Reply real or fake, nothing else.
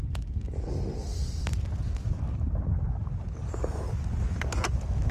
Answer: real